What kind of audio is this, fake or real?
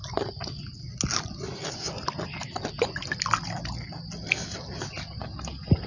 real